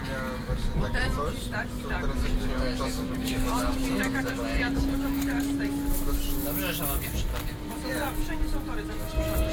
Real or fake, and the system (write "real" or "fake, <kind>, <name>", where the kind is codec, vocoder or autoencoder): real